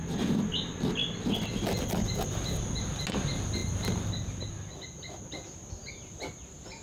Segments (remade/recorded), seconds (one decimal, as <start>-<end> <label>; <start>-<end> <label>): 0.0-6.8 recorded